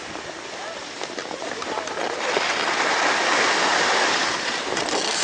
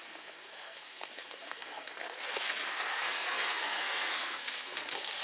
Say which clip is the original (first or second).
first